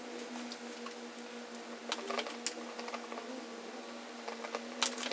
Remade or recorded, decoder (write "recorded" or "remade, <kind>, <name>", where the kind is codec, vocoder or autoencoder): recorded